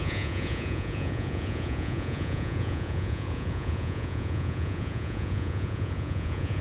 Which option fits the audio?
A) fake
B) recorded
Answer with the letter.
A